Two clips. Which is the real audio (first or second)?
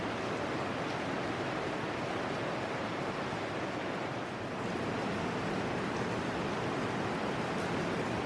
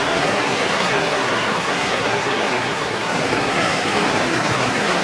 first